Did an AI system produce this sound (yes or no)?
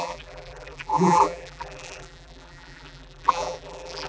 yes